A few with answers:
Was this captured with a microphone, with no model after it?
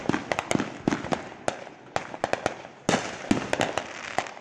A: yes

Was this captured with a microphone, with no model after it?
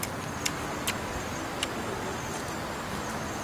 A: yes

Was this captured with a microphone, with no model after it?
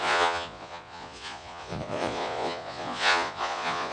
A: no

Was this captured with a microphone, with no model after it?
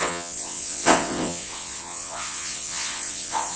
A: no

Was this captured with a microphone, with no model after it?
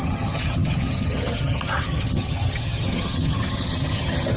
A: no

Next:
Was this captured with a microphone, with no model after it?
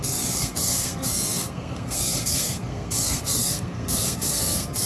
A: no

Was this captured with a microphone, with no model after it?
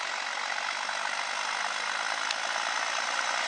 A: yes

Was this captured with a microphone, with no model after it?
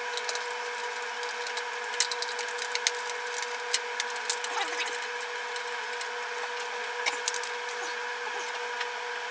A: yes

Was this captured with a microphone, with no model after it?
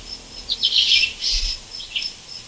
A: yes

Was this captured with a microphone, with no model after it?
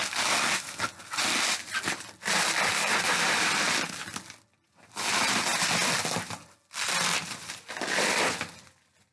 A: yes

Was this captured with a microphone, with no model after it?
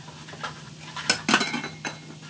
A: yes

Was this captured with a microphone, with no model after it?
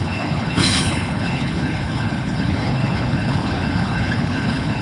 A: no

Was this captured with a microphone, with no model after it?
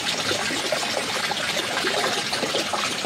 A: yes